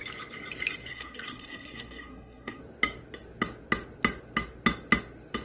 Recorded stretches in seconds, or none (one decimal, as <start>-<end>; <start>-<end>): 0.0-0.9; 2.6-5.4